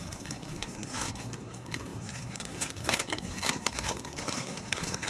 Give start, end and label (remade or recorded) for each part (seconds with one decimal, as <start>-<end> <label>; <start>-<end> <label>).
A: 0.0-5.1 remade